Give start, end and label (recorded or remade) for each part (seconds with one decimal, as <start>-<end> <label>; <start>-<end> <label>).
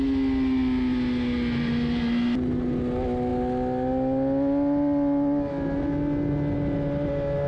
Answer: 0.0-7.5 recorded